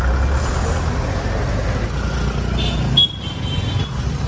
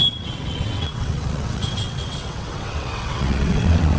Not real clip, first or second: second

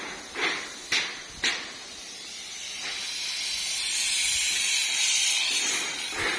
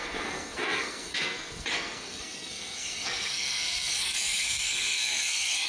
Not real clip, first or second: second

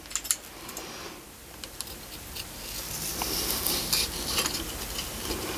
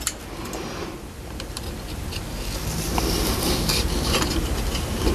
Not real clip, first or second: second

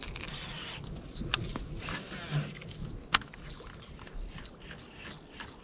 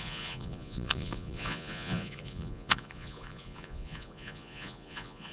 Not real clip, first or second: second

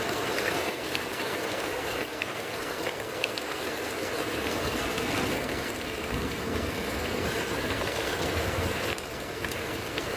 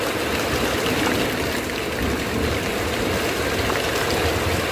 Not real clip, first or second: first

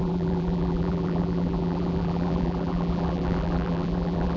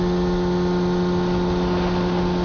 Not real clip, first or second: first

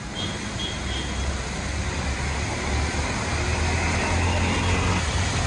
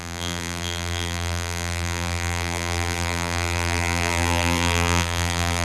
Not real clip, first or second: second